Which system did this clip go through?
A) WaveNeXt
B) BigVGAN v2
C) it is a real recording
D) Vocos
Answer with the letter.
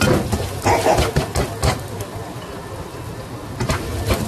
C